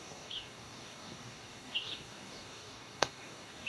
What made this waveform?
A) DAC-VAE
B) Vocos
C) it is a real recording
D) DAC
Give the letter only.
D